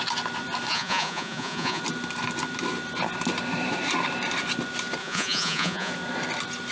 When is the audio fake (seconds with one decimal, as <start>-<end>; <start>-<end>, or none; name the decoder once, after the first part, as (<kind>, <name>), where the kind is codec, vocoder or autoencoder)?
0.7-1.8 (vocoder, Vocos); 5.0-5.9